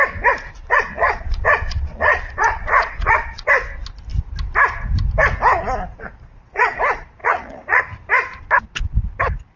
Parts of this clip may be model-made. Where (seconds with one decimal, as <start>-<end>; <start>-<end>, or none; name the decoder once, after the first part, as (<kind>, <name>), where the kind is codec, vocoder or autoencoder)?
0.6-3.5 (vocoder, Vocos); 5.9-6.8; 7.2-7.8